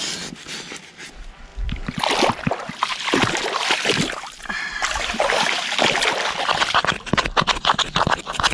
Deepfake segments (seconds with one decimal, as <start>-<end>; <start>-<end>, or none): none